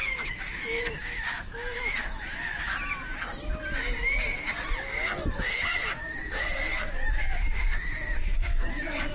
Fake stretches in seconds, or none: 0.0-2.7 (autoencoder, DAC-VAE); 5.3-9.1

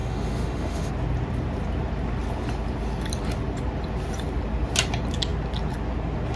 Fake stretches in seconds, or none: 0.0-0.9 (autoencoder, DAC-VAE)